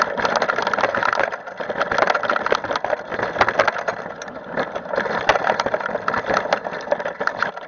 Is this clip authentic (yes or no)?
yes